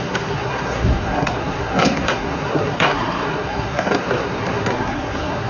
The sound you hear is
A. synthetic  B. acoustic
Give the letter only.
A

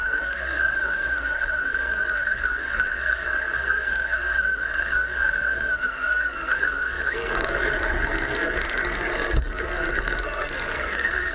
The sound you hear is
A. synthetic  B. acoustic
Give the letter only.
A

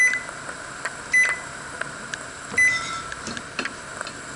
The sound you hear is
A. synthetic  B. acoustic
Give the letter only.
B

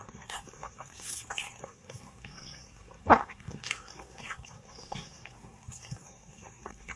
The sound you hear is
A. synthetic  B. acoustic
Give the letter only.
A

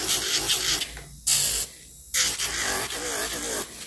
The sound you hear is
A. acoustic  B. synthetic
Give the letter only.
A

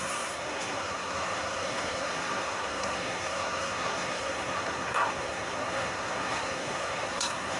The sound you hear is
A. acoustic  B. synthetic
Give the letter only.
B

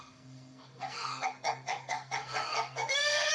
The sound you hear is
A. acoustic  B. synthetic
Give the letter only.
B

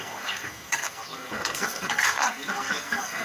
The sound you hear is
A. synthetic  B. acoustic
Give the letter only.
A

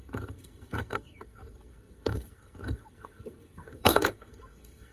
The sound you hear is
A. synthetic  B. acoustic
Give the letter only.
A